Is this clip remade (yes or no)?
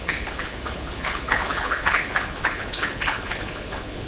yes